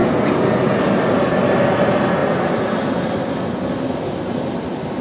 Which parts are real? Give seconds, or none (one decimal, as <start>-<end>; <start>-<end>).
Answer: 0.0-5.0